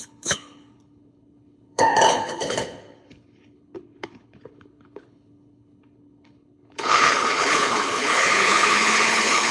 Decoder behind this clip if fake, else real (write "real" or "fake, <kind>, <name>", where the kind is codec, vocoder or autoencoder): fake, codec, HILCodec